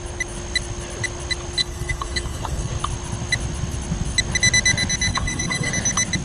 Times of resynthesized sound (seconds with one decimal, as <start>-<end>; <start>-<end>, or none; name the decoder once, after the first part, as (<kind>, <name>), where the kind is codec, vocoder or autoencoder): 1.6-2.7 (codec, SNAC); 5.1-5.7